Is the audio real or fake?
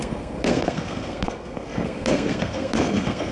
fake